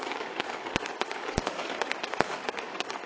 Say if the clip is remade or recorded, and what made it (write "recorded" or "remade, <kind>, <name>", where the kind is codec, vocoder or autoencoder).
remade, codec, DAC